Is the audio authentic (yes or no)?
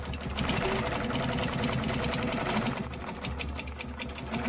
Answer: yes